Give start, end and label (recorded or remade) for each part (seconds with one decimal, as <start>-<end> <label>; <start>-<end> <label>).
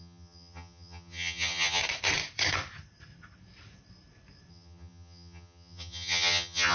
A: 0.0-1.8 remade; 1.8-4.5 recorded; 4.5-6.7 remade